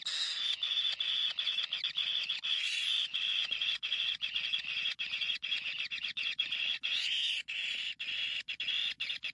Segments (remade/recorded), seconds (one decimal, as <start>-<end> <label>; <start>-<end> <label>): 0.0-2.0 recorded; 2.0-7.1 remade; 7.1-9.3 recorded